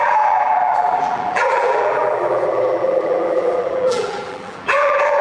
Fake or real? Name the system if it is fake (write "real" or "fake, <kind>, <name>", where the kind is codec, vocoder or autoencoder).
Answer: fake, vocoder, BigVGAN v2